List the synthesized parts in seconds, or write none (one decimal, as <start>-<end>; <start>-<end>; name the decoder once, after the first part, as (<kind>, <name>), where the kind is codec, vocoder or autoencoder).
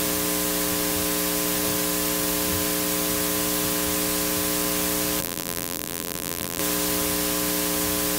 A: 5.2-6.6 (vocoder, BigVGAN v2)